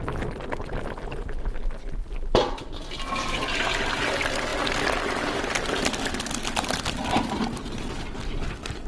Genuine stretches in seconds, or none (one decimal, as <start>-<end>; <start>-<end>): 0.0-8.9